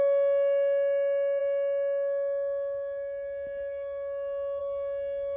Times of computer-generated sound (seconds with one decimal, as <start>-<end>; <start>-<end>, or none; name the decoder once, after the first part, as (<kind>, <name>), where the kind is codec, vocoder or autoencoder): none